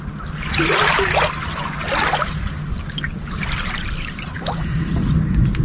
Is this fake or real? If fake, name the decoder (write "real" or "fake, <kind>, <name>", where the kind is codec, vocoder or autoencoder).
real